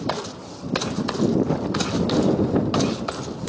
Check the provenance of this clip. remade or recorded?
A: recorded